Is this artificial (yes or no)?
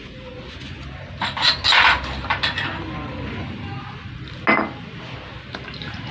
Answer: no